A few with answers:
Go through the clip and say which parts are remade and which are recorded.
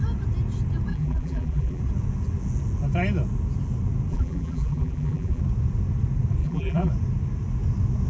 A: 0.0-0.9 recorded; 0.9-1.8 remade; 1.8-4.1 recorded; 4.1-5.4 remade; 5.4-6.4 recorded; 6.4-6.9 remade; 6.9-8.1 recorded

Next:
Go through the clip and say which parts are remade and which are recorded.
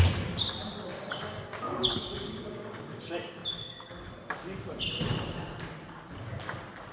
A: 0.0-0.9 recorded; 0.9-3.0 remade; 3.0-6.9 recorded